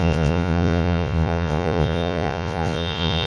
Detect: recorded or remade remade